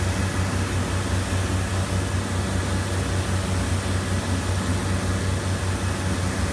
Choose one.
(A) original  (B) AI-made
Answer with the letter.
A